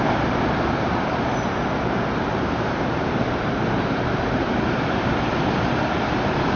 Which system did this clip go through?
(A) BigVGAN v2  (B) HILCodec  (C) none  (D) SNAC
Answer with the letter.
A